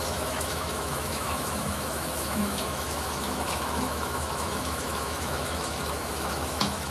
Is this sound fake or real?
fake